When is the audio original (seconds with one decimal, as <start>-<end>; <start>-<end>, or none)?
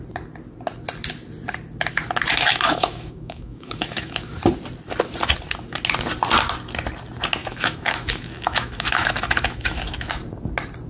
0.0-2.3; 4.3-7.4; 10.1-10.9